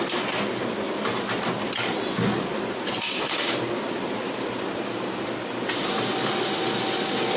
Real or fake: real